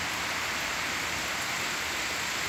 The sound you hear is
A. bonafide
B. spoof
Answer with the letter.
A